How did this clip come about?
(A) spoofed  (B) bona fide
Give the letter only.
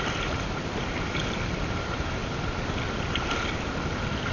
B